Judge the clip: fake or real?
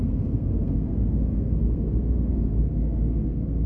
fake